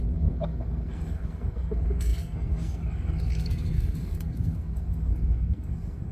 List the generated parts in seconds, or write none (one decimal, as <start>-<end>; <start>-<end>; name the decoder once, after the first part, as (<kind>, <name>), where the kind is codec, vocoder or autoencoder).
0.0-6.1 (codec, SNAC)